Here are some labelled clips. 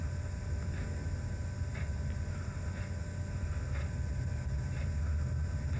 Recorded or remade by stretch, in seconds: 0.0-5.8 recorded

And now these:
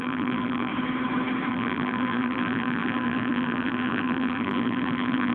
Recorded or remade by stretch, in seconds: 0.0-0.7 remade; 0.7-1.5 recorded; 1.5-5.3 remade

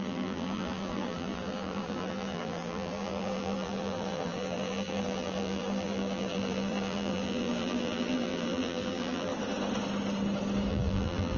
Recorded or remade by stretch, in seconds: 0.0-9.3 remade; 9.3-10.7 recorded; 10.7-11.4 remade

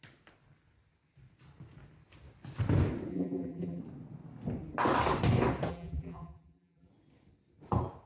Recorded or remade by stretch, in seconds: 0.0-3.1 recorded; 3.1-3.8 remade; 3.8-5.7 recorded; 5.7-6.9 remade; 6.9-8.1 recorded

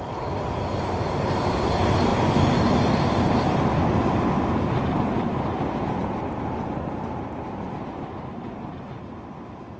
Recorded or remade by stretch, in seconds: 0.0-9.8 recorded

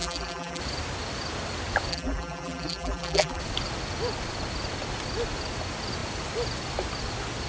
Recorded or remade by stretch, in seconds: 0.0-0.6 remade; 0.6-1.9 recorded; 1.9-3.4 remade; 3.4-7.5 recorded

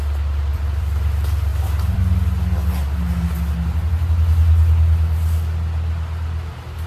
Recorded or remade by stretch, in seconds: 0.0-0.5 recorded; 0.5-1.1 remade; 1.1-1.5 recorded; 1.5-2.0 remade; 2.0-6.9 recorded

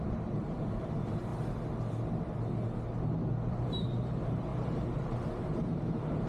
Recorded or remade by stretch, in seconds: 0.0-1.3 remade; 1.3-3.5 recorded; 3.5-4.5 remade; 4.5-5.3 recorded; 5.3-6.3 remade